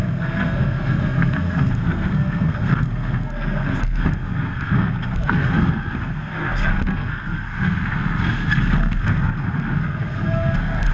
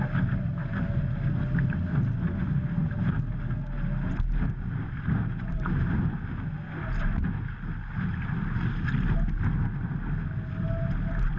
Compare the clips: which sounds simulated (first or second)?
first